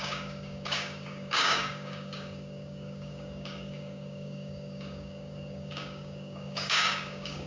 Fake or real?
fake